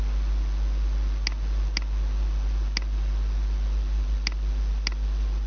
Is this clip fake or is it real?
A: real